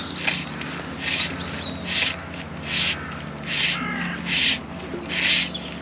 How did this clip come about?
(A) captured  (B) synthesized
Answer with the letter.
A